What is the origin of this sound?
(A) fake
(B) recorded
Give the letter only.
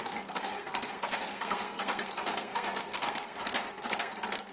A